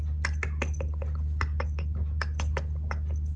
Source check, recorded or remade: recorded